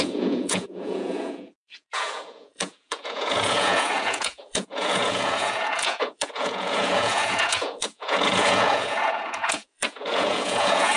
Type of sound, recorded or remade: remade